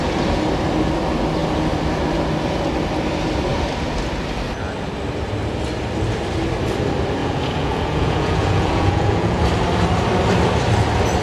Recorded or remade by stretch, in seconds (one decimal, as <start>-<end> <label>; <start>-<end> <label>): 0.0-7.2 recorded; 7.2-9.4 remade; 9.4-11.2 recorded